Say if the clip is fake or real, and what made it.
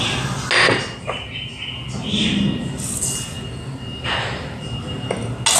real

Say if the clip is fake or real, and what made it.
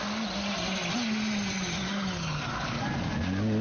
real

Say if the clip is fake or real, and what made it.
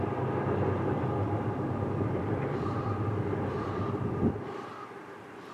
fake, vocoder, BigVGAN v2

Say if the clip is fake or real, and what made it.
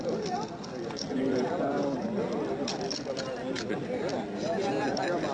real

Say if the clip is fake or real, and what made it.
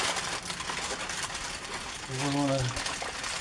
real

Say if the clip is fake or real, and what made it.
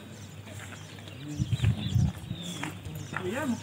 real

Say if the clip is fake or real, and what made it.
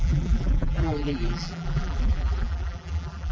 fake, vocoder, BigVGAN v2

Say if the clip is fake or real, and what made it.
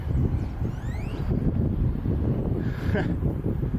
fake, vocoder, BigVGAN v2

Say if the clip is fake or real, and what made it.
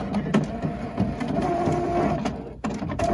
real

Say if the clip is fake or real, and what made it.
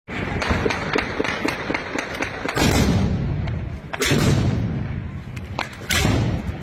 real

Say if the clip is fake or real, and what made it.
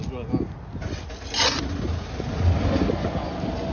real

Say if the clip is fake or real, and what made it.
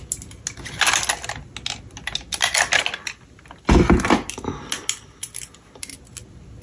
real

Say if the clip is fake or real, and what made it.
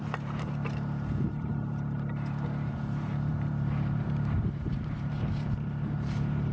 fake, vocoder, BigVGAN v2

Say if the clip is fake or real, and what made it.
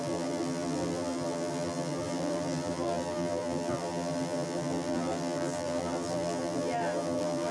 fake, vocoder, BigVGAN v2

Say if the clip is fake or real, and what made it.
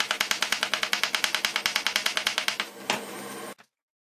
real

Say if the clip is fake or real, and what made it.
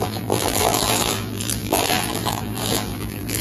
fake, vocoder, BigVGAN v2